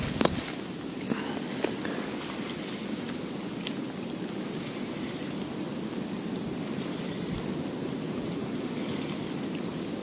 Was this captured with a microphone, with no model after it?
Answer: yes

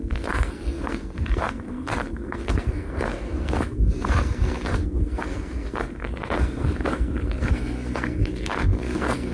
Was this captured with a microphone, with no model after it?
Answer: no